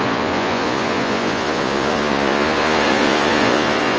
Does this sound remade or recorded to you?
remade